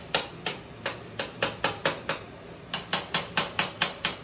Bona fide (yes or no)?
yes